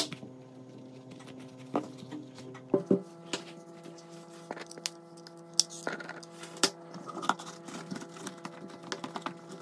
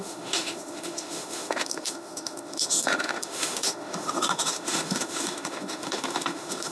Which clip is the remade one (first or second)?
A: second